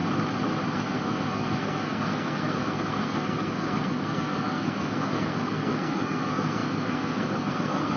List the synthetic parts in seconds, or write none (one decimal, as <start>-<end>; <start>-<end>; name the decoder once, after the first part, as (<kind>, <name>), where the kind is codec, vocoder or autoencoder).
0.7-8.0 (codec, SNAC)